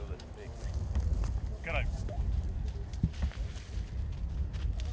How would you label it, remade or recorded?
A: recorded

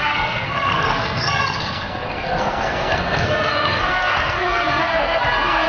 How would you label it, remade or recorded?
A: remade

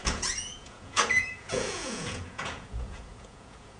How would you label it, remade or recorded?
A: remade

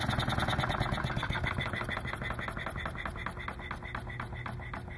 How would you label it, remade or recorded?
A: recorded